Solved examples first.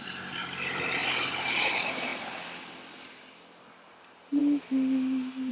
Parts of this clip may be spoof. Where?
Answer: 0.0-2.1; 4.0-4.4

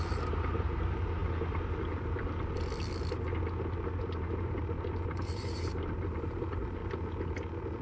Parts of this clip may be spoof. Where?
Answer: 0.0-1.2; 4.0-6.8

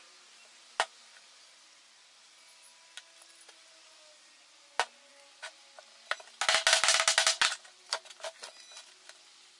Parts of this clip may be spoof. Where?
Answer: none

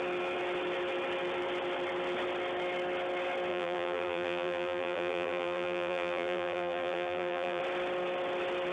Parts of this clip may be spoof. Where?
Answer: 3.5-7.6

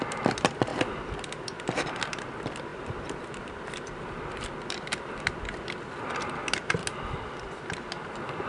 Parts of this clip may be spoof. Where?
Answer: 0.7-1.6; 2.7-5.2

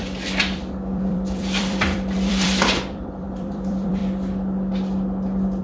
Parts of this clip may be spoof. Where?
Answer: 0.0-4.0

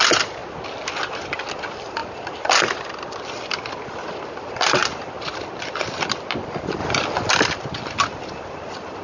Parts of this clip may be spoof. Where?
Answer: 0.0-0.4; 1.5-4.8; 5.3-6.8; 7.3-9.0

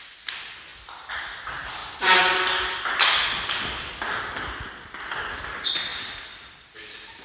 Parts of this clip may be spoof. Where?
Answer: 5.9-7.2